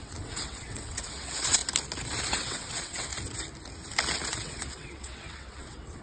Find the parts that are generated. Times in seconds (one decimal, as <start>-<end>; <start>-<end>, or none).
0.0-1.6; 2.3-3.1; 4.3-6.0